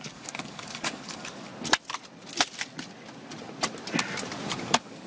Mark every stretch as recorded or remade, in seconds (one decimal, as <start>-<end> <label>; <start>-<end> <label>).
0.0-1.5 remade; 1.5-4.6 recorded; 4.6-5.1 remade